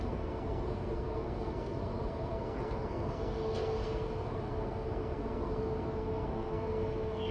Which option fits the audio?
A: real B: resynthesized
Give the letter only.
B